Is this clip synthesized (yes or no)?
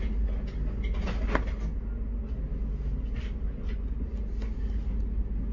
no